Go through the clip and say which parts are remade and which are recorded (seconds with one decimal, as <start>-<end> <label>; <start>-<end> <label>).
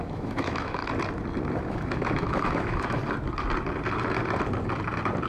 0.0-0.8 remade; 0.8-1.7 recorded; 1.7-3.0 remade; 3.0-5.3 recorded